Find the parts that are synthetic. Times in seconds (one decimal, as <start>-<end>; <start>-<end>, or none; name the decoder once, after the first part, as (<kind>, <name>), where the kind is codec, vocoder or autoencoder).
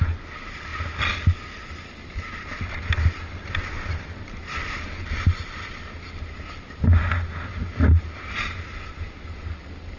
none